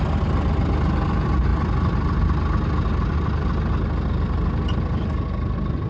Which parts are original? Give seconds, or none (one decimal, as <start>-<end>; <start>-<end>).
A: 0.0-5.9